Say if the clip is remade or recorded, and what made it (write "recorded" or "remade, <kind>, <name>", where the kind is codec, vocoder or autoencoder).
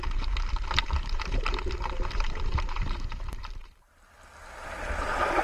remade, vocoder, BigVGAN v2